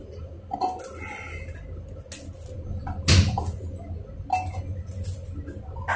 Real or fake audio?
real